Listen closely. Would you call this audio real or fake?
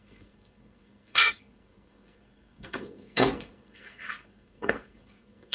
fake